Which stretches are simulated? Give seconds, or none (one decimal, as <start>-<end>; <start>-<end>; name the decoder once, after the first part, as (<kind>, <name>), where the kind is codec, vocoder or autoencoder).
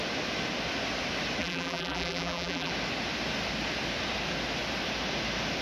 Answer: 1.4-2.7 (vocoder, BigVGAN v2)